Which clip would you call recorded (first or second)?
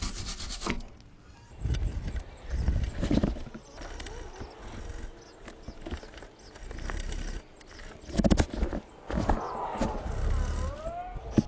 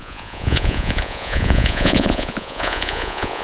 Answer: first